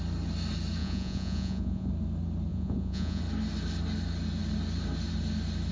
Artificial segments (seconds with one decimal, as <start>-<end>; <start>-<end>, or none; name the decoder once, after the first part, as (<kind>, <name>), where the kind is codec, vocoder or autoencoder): 0.8-1.9 (vocoder, Vocos); 2.5-3.2